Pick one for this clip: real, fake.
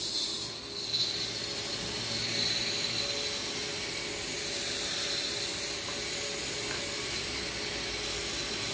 real